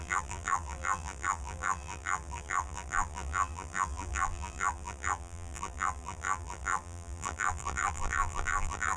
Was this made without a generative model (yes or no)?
no